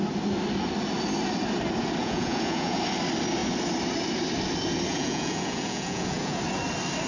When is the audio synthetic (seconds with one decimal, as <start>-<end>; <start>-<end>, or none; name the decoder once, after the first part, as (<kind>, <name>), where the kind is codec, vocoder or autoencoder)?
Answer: 2.0-2.8 (vocoder, Vocos); 4.9-6.4